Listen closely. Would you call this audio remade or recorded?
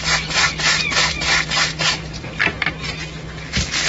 recorded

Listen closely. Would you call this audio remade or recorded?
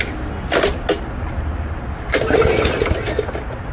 recorded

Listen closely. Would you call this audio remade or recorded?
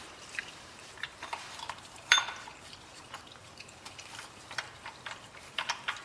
remade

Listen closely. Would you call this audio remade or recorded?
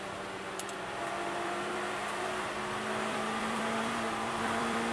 remade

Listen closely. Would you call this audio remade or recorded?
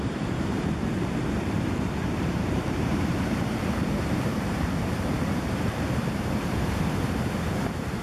remade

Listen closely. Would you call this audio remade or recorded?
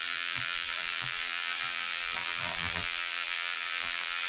remade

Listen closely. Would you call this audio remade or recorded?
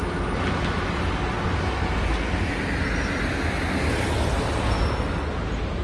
recorded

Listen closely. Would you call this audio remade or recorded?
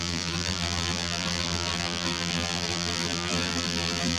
remade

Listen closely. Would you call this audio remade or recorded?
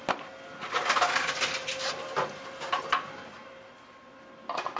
recorded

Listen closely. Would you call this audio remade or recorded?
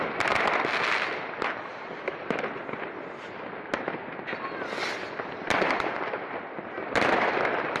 recorded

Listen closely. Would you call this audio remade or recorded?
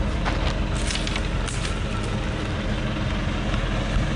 recorded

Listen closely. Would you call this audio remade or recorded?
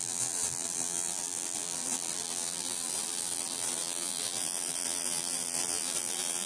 remade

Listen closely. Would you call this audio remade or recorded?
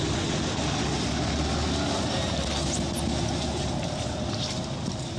recorded